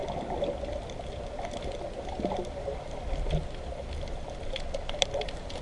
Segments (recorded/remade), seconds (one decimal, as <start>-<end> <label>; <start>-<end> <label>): 0.0-5.6 recorded